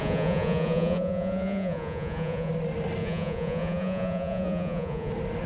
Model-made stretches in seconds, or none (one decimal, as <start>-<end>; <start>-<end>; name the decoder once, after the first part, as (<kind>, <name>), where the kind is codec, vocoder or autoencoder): 0.0-2.5 (vocoder, Vocos); 3.0-5.1